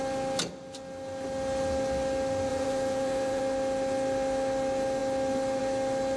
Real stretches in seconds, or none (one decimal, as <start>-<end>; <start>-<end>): 0.0-2.5; 3.4-6.2